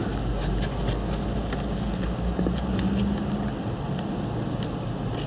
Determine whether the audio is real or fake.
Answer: real